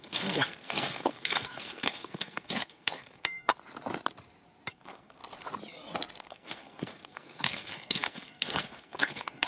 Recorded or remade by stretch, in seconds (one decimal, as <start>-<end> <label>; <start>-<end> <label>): 0.0-3.5 remade; 3.5-4.7 recorded; 4.7-5.2 remade; 5.2-6.2 recorded; 6.2-9.5 remade